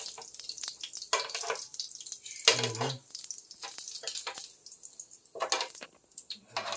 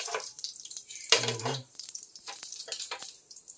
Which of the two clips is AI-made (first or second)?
second